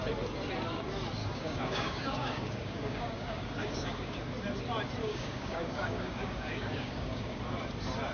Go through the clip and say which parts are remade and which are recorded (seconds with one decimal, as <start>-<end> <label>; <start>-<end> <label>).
0.0-1.2 recorded; 1.2-4.2 remade; 4.2-5.0 recorded; 5.0-7.4 remade; 7.4-8.1 recorded